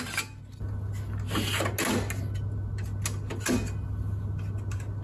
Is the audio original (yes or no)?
yes